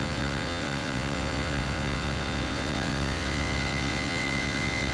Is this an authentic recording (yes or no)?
no